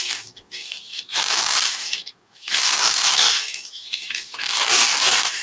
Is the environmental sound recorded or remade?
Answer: remade